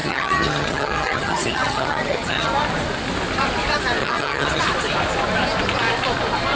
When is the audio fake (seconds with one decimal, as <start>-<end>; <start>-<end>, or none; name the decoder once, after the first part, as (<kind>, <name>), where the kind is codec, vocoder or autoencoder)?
0.0-2.5 (vocoder, HiFi-GAN); 4.0-4.6